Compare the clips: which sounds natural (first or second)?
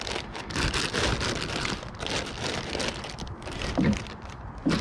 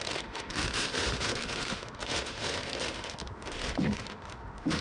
first